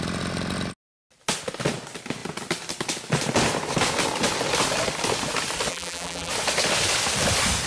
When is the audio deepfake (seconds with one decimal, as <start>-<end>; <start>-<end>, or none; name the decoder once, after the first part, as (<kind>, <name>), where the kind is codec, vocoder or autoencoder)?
5.7-6.3 (vocoder, BigVGAN v2)